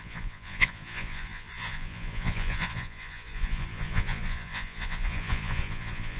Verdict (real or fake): fake